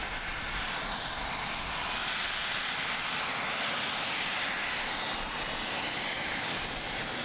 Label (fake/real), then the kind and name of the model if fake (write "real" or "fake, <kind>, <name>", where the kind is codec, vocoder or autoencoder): real